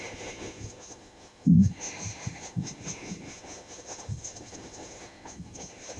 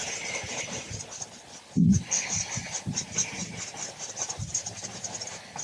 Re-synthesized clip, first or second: first